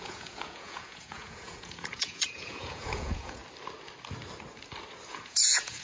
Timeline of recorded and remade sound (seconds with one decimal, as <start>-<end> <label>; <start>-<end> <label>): 0.0-3.4 remade; 3.4-5.1 recorded; 5.1-5.8 remade